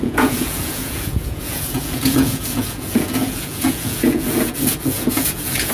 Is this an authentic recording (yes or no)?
no